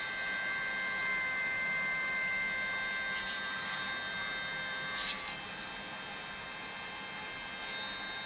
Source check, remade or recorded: recorded